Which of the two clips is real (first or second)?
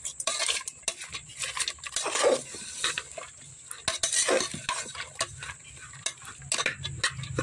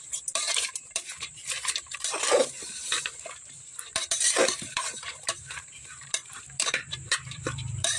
first